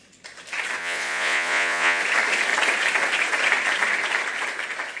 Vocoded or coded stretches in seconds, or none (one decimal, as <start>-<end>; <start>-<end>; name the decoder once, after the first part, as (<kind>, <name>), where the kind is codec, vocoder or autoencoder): 0.8-2.0 (vocoder, Vocos)